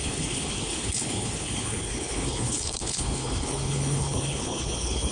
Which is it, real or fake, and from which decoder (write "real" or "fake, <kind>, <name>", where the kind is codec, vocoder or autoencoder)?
fake, codec, HILCodec